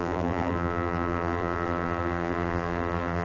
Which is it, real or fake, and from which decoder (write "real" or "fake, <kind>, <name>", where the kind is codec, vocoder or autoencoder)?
fake, vocoder, BigVGAN v2